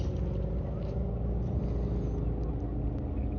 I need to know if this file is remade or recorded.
recorded